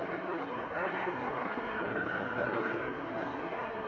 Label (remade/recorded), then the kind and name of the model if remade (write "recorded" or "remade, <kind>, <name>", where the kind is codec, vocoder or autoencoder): remade, codec, SNAC